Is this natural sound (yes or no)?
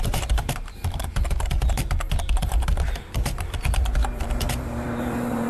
no